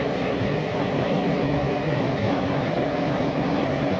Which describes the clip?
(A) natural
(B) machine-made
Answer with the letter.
B